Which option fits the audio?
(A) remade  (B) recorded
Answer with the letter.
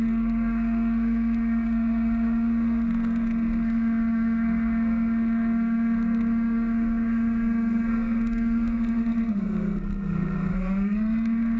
A